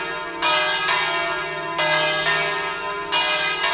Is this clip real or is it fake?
real